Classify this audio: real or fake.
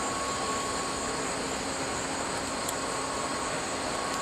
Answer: real